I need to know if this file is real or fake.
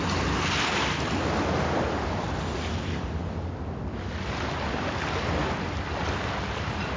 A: real